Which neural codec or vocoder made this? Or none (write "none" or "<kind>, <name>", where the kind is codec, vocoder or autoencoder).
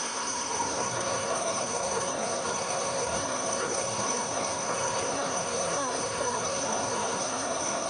codec, SNAC